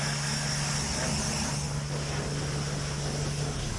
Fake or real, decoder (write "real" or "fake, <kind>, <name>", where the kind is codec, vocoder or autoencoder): real